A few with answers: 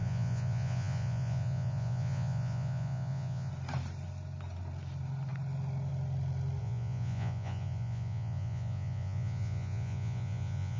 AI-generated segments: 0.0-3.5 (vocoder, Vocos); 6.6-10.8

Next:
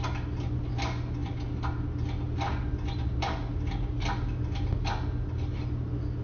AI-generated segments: none

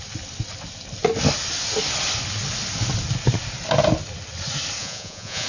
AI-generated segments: 4.8-5.5 (vocoder, Vocos)

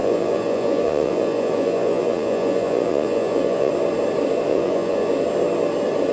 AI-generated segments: 0.0-3.7 (vocoder, Vocos); 4.5-5.1

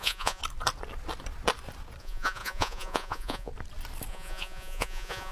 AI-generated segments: 0.0-0.4 (vocoder, Vocos); 2.0-3.5; 4.1-5.3